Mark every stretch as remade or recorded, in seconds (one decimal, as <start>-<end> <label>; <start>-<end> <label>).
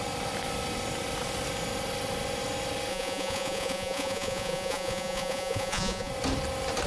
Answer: 0.0-2.9 recorded; 2.9-6.1 remade; 6.1-6.9 recorded